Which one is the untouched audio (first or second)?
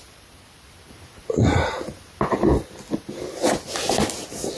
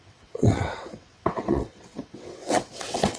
first